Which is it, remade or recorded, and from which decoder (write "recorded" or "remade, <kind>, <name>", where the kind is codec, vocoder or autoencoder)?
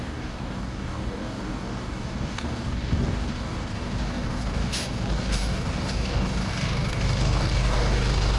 remade, codec, DAC